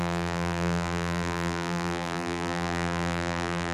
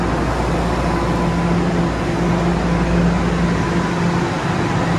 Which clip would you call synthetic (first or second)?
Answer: first